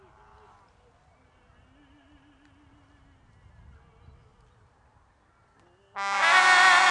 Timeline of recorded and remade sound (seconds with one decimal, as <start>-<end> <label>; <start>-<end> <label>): 0.0-6.9 recorded